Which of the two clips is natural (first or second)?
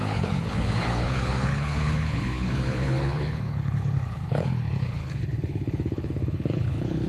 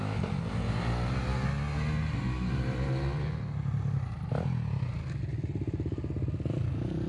second